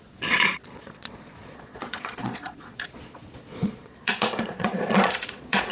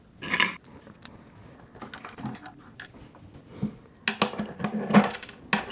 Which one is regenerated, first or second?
first